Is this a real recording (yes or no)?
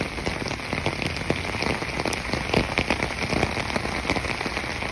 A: yes